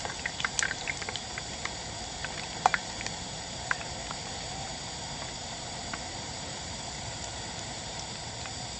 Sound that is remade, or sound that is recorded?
remade